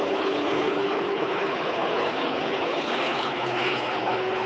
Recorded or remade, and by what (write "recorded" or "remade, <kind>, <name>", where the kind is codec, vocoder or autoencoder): remade, codec, HILCodec